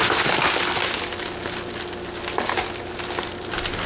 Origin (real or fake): real